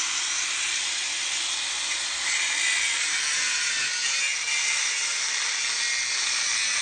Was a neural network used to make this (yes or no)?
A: no